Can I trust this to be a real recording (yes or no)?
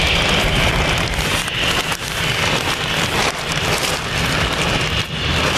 yes